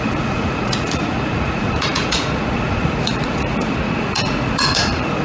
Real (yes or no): no